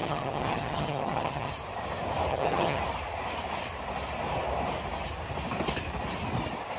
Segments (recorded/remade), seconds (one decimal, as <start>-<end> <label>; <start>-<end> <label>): 0.0-1.5 remade; 1.5-2.3 recorded; 2.3-2.8 remade; 2.8-6.8 recorded